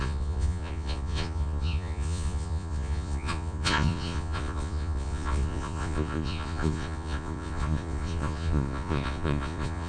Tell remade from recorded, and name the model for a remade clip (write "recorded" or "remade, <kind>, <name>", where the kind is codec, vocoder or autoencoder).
remade, vocoder, Vocos